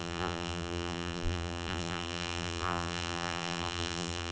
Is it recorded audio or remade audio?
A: remade